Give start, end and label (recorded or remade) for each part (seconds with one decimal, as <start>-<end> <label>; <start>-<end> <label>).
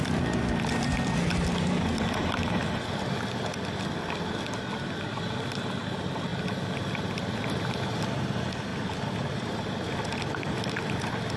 0.0-0.9 remade; 0.9-6.3 recorded; 6.3-7.8 remade; 7.8-11.4 recorded